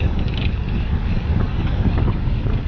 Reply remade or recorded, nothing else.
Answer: remade